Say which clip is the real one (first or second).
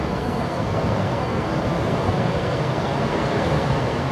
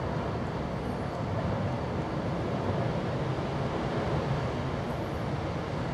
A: second